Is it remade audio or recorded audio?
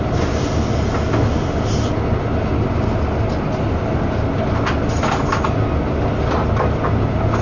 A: recorded